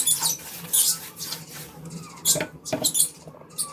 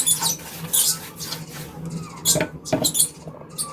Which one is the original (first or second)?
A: second